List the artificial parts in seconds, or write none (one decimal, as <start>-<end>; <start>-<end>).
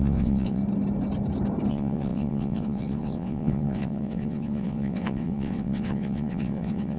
0.0-0.6; 1.7-7.0